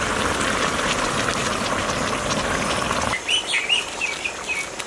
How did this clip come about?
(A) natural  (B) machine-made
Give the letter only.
A